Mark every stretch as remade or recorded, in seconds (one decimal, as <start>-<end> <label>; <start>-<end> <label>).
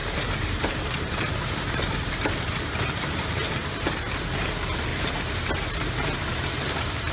0.0-3.9 remade; 3.9-4.9 recorded; 4.9-7.1 remade